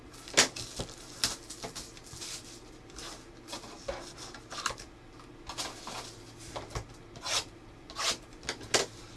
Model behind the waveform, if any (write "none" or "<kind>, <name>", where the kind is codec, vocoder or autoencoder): none